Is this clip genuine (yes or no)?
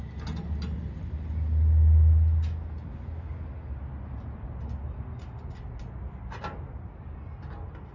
yes